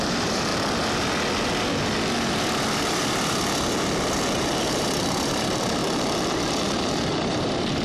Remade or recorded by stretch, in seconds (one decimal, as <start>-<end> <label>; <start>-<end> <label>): 0.0-0.5 remade; 0.5-4.7 recorded; 4.7-5.8 remade; 5.8-7.2 recorded; 7.2-7.8 remade